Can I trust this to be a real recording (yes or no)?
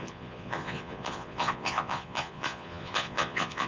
no